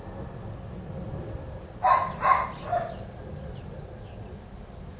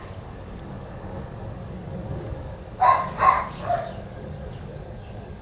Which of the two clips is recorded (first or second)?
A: first